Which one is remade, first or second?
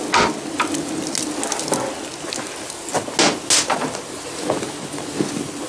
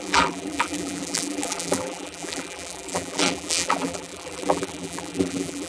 second